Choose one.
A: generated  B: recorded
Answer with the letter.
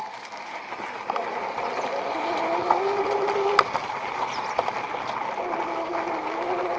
B